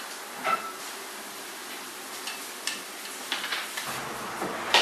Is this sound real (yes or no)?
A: no